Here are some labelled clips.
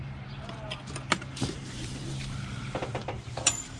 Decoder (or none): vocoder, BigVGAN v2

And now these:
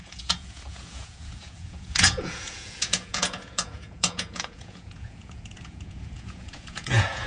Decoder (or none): vocoder, Vocos